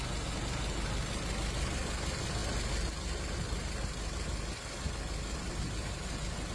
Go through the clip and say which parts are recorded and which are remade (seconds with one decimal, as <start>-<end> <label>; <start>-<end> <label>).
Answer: 0.0-6.5 recorded